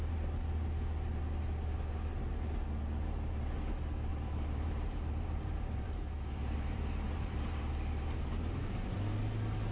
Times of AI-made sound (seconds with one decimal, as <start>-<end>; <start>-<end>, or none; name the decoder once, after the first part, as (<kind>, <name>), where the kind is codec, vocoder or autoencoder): 4.1-8.6 (vocoder, BigVGAN v2)